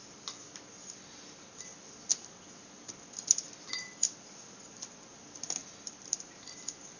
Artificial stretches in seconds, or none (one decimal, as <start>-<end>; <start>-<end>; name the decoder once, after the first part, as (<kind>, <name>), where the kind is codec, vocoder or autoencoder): none